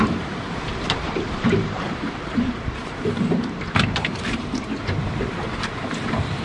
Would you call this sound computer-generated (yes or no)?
yes